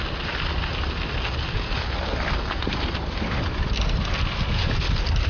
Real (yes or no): yes